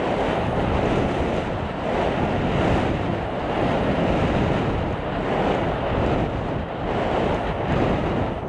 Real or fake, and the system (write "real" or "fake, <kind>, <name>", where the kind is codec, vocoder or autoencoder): real